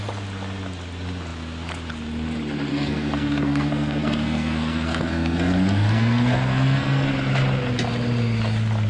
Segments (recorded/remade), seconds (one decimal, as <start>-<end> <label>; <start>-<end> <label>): 0.0-2.7 recorded; 2.7-7.1 remade; 7.1-8.9 recorded